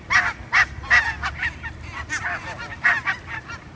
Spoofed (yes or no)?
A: yes